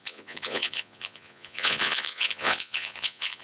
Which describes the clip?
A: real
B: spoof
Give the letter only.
B